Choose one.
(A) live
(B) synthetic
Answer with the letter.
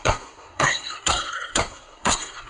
B